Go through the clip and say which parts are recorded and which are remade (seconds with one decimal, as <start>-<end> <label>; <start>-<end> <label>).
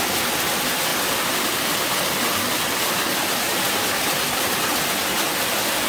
0.0-5.9 recorded